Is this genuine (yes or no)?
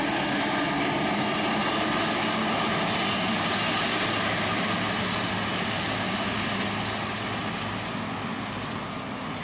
yes